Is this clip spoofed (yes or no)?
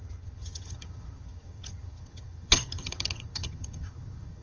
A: yes